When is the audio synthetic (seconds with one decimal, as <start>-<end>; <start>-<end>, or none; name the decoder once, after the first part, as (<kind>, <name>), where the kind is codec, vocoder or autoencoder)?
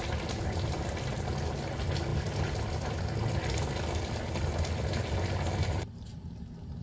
none